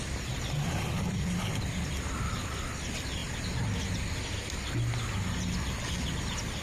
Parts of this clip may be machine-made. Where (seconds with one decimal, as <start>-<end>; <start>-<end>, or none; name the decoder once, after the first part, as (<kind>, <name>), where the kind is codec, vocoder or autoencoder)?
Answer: none